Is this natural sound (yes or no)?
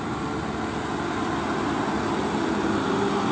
yes